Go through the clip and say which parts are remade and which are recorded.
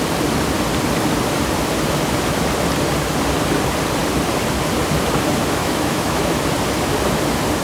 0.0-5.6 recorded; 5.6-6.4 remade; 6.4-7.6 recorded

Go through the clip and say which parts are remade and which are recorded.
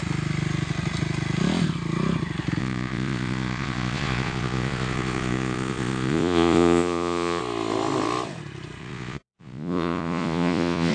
0.0-2.6 recorded; 2.6-7.4 remade; 7.4-8.8 recorded; 8.8-10.9 remade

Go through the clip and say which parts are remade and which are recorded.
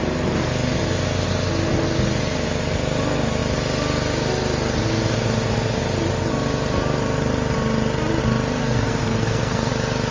0.0-8.6 recorded; 8.6-9.7 remade; 9.7-10.1 recorded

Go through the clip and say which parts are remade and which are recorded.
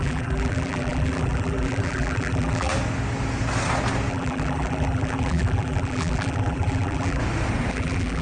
0.0-2.7 remade; 2.7-4.1 recorded; 4.1-7.2 remade; 7.2-7.7 recorded; 7.7-8.2 remade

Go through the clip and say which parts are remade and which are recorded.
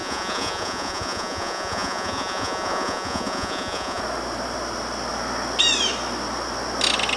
0.0-4.0 remade; 4.0-7.2 recorded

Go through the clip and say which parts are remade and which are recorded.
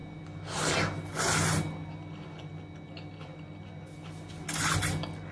0.0-5.3 recorded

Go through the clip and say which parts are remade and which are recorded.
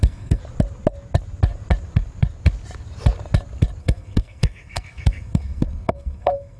0.0-0.4 remade; 0.4-3.8 recorded; 3.8-6.6 remade